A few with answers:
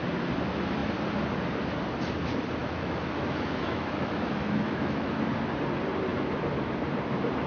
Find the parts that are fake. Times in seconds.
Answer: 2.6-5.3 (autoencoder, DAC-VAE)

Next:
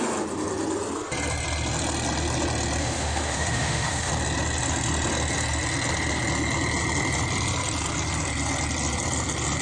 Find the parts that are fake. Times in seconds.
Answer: 2.8-4.1 (autoencoder, DAC-VAE)

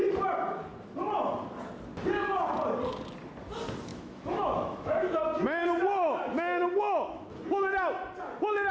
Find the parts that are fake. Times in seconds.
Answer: 3.9-5.2 (autoencoder, DAC-VAE); 6.3-7.4

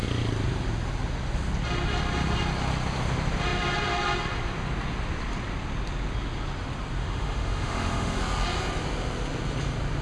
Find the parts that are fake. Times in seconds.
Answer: 7.0-8.2 (autoencoder, DAC-VAE)